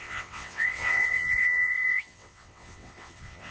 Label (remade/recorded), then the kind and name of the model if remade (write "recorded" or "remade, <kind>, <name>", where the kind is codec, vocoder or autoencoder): remade, vocoder, WaveNeXt